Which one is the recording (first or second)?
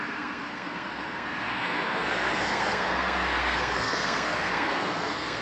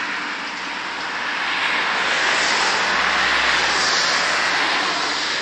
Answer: second